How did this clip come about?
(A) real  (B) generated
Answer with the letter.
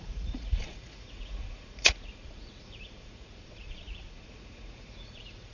B